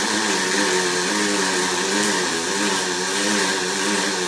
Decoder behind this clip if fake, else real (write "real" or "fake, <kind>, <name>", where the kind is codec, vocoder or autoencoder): real